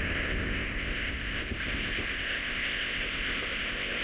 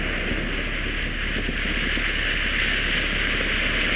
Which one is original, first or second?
second